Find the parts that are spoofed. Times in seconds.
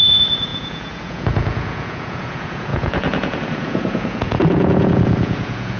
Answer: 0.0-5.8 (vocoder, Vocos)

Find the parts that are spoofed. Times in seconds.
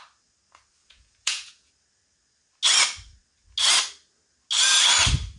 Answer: 0.8-1.7 (vocoder, Vocos)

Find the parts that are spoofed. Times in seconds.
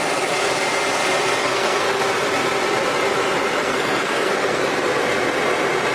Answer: 1.4-2.0 (codec, SNAC); 3.6-4.6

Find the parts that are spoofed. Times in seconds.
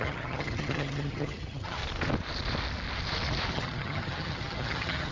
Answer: 0.0-1.8 (vocoder, HiFi-GAN); 3.5-5.1